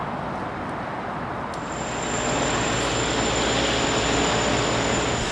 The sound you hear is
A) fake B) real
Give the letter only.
B